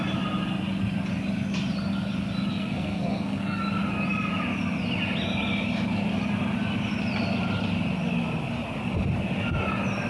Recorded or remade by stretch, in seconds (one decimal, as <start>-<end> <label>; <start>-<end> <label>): 0.0-2.5 recorded; 2.5-3.6 remade; 3.6-10.1 recorded